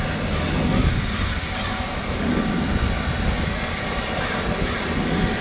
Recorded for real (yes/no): yes